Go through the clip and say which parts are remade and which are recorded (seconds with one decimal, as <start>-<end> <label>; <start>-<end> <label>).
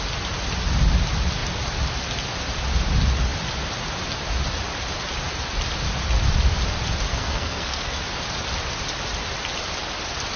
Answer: 0.0-7.1 recorded; 7.1-8.0 remade; 8.0-10.4 recorded